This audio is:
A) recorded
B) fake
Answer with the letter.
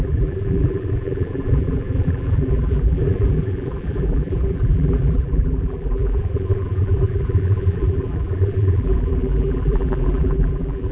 B